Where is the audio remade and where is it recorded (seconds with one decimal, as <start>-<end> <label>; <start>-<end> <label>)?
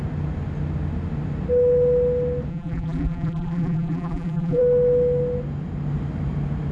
0.0-2.5 recorded; 2.5-4.6 remade; 4.6-6.7 recorded